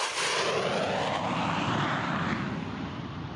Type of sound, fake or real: real